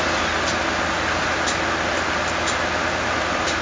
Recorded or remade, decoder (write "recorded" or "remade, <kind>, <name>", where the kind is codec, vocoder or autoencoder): recorded